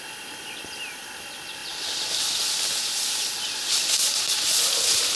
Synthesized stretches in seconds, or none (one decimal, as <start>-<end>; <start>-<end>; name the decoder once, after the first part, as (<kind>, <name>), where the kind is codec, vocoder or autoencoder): none